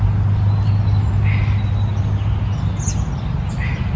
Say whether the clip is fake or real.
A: real